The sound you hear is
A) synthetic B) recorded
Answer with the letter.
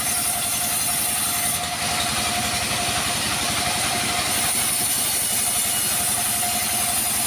B